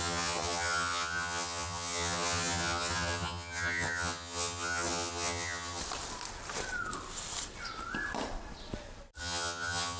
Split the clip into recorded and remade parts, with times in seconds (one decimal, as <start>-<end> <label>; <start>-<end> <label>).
0.0-5.8 remade; 5.8-9.2 recorded; 9.2-10.0 remade